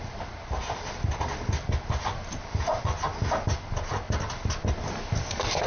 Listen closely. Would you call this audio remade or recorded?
recorded